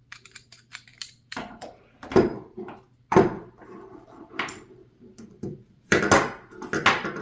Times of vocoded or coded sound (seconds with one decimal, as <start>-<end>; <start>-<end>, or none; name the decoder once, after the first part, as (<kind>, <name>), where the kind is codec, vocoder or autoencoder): 0.9-4.3 (vocoder, BigVGAN v2); 4.8-6.0